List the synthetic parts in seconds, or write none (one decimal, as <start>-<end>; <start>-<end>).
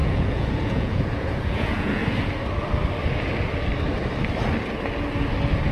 0.0-2.0